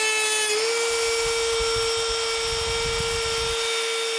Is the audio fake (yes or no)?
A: no